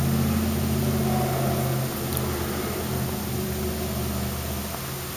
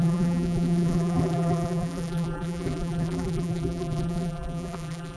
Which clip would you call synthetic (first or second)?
second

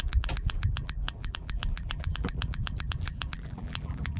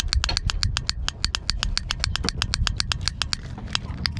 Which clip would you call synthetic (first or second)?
first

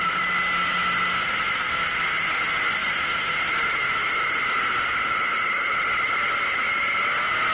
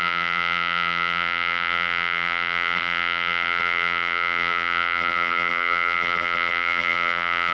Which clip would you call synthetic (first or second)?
second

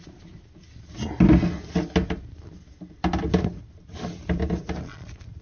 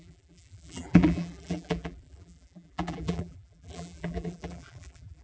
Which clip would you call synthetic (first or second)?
second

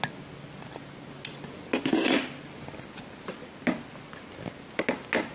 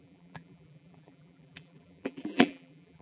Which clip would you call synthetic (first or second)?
second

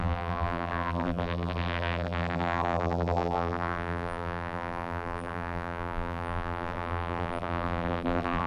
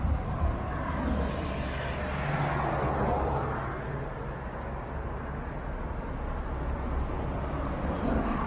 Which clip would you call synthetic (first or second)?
first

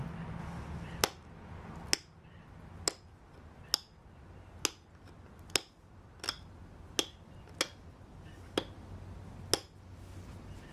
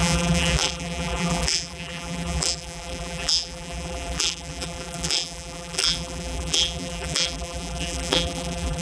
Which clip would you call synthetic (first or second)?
second